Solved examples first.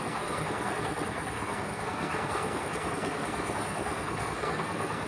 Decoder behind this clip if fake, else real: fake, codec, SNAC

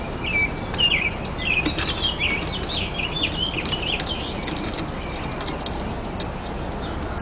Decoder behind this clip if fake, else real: real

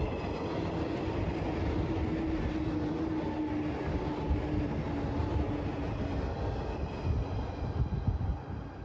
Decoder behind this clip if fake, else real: real